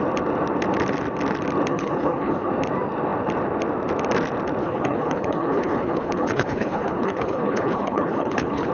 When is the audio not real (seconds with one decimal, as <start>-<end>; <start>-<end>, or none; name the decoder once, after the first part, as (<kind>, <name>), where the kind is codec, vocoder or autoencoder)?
1.7-2.5 (codec, HILCodec); 4.6-8.7